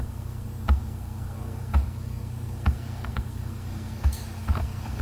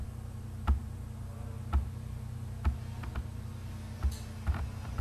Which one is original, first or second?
second